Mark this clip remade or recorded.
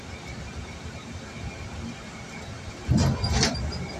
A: recorded